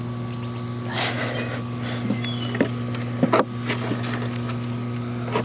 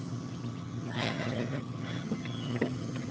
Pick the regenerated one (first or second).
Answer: second